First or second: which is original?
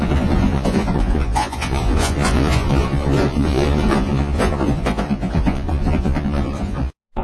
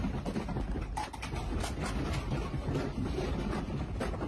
second